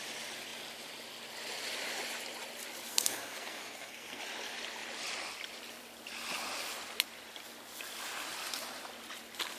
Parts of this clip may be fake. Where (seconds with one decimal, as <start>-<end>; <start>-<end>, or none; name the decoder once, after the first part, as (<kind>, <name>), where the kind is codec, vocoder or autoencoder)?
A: 2.9-4.2 (codec, SNAC)